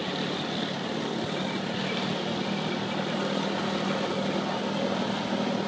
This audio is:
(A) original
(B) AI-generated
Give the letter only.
A